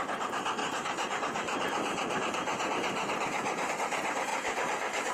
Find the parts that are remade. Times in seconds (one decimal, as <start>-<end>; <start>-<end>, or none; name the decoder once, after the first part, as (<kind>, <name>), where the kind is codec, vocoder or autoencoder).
0.6-3.7 (vocoder, BigVGAN v2); 4.3-5.1